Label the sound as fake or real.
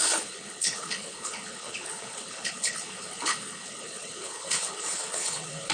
fake